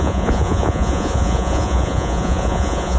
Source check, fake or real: fake